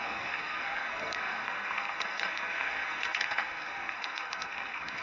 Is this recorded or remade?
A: remade